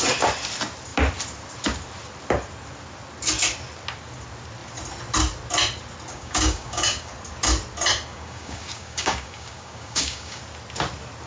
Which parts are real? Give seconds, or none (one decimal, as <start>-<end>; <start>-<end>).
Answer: 0.0-6.1; 7.1-8.1; 10.4-11.3